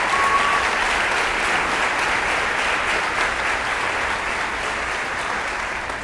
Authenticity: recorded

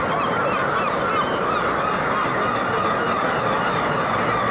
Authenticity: recorded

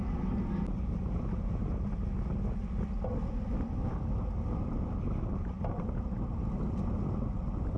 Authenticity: recorded